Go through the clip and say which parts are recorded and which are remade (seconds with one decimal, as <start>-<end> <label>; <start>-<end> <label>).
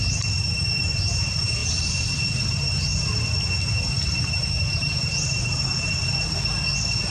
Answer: 0.0-1.6 remade; 1.6-2.5 recorded; 2.5-2.9 remade; 2.9-4.0 recorded; 4.0-6.0 remade; 6.0-7.1 recorded